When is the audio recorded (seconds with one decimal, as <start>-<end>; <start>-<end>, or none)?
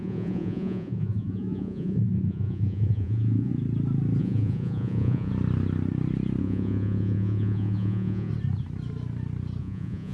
3.5-4.2; 5.3-6.4; 8.3-9.6